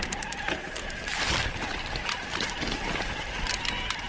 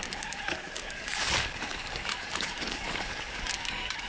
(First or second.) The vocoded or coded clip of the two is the second